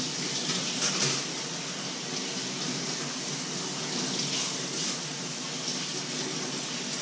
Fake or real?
real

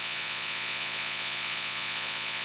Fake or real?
fake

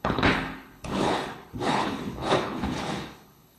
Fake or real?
fake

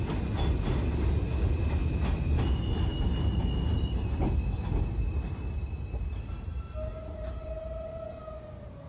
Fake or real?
real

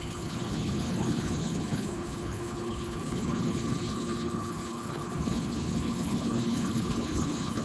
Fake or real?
fake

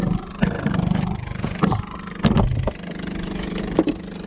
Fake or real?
real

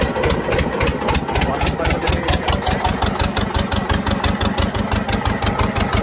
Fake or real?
real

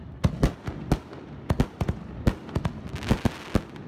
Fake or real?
real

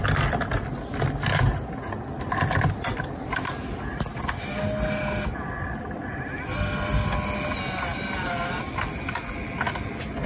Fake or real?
real